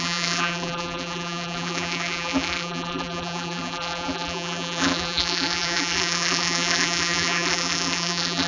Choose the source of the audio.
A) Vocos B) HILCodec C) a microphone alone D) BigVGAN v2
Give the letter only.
D